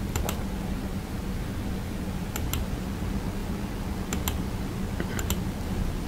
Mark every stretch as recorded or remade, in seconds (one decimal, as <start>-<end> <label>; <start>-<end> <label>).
0.0-6.1 recorded